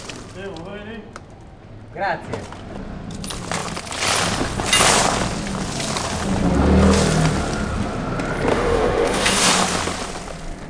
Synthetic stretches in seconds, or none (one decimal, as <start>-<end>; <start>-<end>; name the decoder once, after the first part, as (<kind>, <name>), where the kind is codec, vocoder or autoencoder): 8.5-9.5 (autoencoder, DAC-VAE)